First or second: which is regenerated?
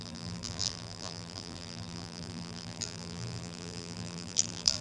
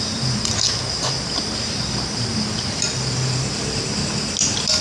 first